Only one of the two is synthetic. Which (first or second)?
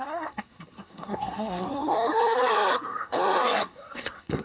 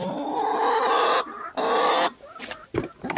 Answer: first